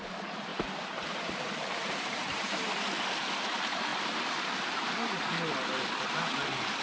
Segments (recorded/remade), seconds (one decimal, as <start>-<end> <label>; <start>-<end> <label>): 0.0-0.5 recorded; 0.5-2.8 remade; 2.8-3.9 recorded; 3.9-5.2 remade; 5.2-6.8 recorded